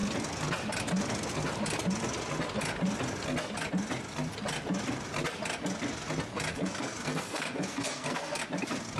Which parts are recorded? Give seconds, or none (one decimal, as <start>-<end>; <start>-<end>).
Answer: 0.0-6.5; 8.4-9.0